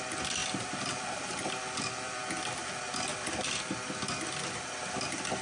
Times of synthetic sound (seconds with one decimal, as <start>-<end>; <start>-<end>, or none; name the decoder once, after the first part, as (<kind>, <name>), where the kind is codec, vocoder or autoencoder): 0.4-2.2 (vocoder, BigVGAN v2)